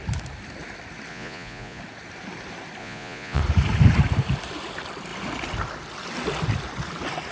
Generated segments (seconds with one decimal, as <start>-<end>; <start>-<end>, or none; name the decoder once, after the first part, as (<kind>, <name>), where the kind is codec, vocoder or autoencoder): 1.1-1.8 (vocoder, Vocos); 2.8-3.4